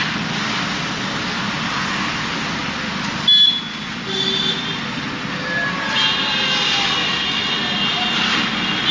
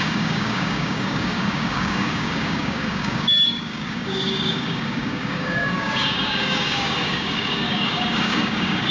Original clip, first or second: first